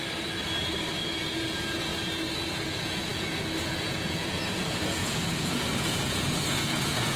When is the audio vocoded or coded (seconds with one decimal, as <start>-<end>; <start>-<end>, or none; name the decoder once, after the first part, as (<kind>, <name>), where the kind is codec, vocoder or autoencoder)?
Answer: 1.2-1.9 (vocoder, Vocos); 2.5-7.2